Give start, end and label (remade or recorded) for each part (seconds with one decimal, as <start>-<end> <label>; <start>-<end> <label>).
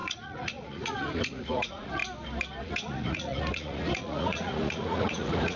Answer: 0.0-2.0 remade; 2.0-2.6 recorded; 2.6-5.6 remade